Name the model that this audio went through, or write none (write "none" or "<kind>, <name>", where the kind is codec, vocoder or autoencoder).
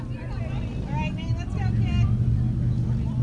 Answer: none